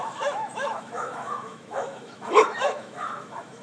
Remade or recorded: remade